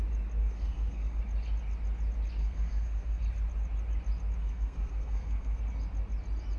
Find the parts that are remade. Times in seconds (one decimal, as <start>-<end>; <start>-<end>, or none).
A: 0.4-1.2; 2.4-3.2; 4.4-5.6